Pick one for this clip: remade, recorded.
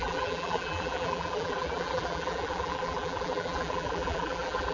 remade